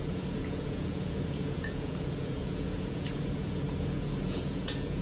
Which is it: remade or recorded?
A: remade